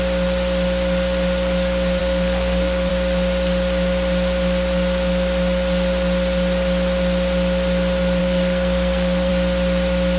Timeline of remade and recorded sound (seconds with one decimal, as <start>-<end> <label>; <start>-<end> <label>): 0.0-2.0 recorded; 2.0-2.9 remade; 2.9-8.2 recorded; 8.2-9.3 remade; 9.3-10.2 recorded